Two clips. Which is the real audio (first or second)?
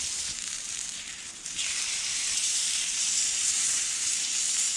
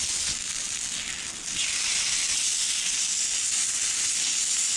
second